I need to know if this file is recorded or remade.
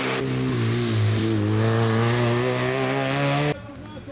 recorded